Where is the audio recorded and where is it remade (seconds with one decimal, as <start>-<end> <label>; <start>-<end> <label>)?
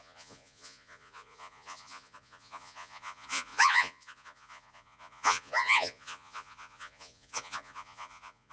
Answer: 0.0-8.5 remade